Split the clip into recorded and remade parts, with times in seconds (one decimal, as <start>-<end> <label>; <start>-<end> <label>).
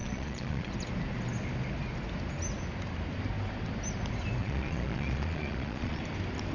0.0-0.7 remade; 0.7-4.4 recorded; 4.4-6.0 remade; 6.0-6.5 recorded